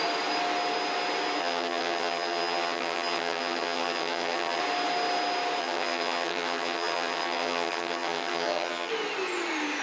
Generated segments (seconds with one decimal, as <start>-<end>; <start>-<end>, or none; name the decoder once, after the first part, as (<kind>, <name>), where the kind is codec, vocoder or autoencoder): 1.4-4.6 (vocoder, HiFi-GAN); 5.6-8.9